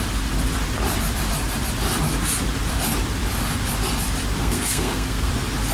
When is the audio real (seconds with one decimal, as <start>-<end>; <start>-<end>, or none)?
0.0-4.4; 5.3-5.7